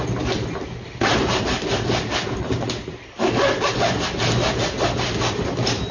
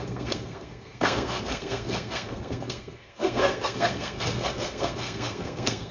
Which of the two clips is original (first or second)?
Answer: first